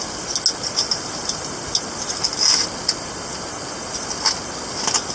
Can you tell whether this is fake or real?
real